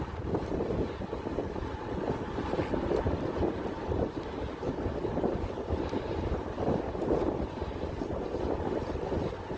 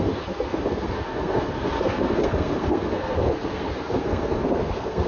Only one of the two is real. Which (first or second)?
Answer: first